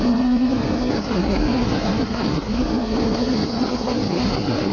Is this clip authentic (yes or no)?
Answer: no